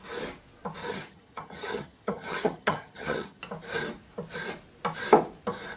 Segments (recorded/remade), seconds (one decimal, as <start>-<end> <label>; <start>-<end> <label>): 0.0-0.8 recorded; 0.8-3.4 remade; 3.4-5.8 recorded